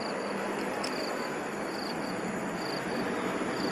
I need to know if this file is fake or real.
real